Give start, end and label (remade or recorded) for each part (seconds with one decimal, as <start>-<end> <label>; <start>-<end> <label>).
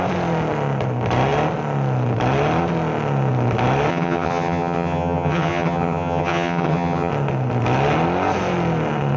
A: 0.0-3.9 recorded; 3.9-7.1 remade; 7.1-9.2 recorded